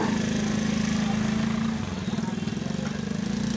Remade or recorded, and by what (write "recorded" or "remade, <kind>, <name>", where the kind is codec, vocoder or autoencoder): recorded